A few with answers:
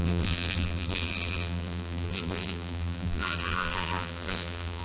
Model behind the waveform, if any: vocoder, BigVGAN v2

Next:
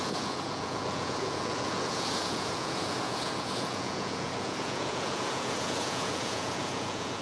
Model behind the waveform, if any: vocoder, Vocos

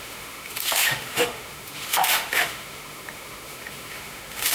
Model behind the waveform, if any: autoencoder, DAC-VAE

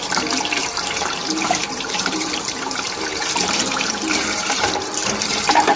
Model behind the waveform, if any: vocoder, BigVGAN v2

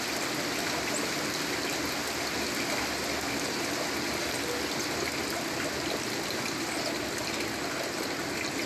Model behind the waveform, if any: none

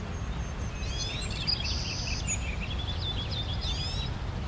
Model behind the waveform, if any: none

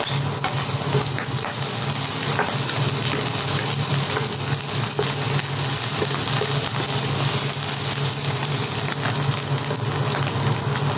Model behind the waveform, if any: none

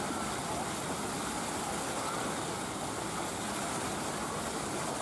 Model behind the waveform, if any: none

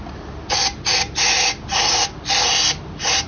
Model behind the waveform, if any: none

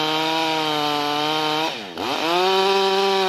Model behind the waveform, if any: none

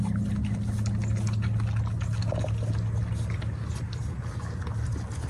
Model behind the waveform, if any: none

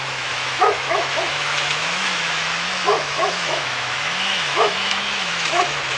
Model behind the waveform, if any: autoencoder, DAC-VAE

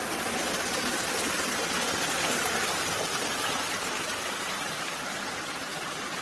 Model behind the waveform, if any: none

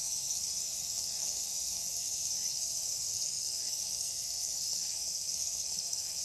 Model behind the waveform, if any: codec, SNAC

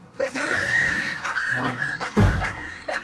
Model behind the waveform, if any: codec, SNAC